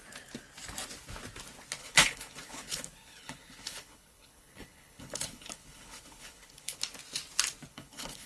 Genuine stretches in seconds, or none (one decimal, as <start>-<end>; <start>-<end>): 0.0-1.8; 6.8-7.7